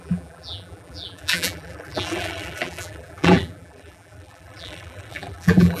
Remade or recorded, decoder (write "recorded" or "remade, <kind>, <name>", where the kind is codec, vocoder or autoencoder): remade, vocoder, BigVGAN v2